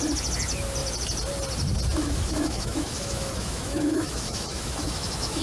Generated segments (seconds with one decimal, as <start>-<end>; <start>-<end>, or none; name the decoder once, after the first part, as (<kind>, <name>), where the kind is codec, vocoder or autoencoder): 2.0-5.4 (autoencoder, DAC-VAE)